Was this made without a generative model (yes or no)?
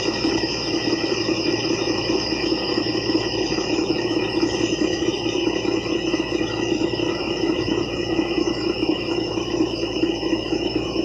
no